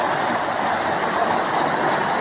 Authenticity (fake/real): real